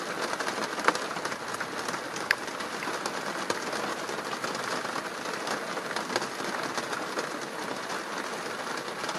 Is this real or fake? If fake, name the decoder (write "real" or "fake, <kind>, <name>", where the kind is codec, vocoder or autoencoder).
real